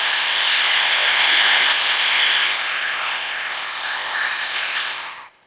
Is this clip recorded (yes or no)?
no